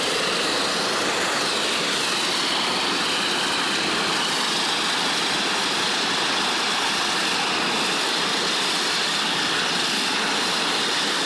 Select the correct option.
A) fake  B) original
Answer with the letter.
B